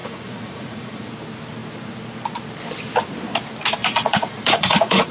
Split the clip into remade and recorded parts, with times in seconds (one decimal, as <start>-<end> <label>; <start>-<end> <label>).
0.0-1.1 remade; 1.1-3.8 recorded; 3.8-5.1 remade